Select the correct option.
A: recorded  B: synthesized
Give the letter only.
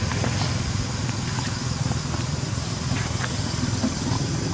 A